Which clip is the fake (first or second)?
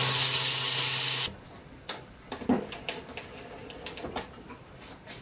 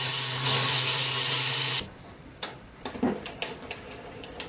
second